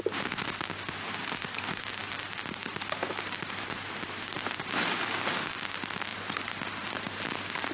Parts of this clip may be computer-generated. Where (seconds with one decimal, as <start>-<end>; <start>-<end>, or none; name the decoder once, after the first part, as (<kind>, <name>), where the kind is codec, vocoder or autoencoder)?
none